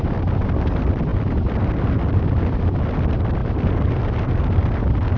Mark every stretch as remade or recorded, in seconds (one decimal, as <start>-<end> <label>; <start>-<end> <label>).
0.0-5.2 recorded